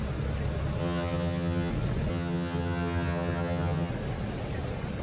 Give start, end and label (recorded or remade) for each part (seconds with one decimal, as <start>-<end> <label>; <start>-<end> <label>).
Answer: 0.0-0.8 recorded; 0.8-1.7 remade; 1.7-2.1 recorded; 2.1-3.9 remade; 3.9-5.0 recorded